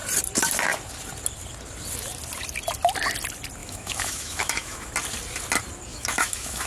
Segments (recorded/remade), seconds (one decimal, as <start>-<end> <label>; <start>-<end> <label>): 0.0-3.6 recorded; 3.6-4.9 remade; 4.9-5.9 recorded; 5.9-6.7 remade